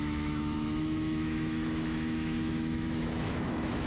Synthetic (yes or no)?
yes